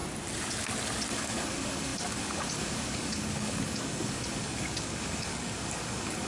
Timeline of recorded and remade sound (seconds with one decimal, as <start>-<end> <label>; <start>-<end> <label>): 0.0-1.1 recorded; 1.1-6.3 remade